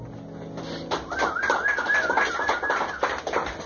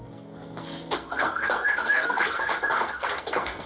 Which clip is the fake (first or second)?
second